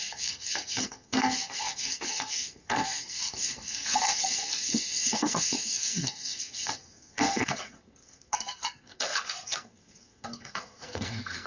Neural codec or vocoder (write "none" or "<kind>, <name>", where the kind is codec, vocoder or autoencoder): codec, SNAC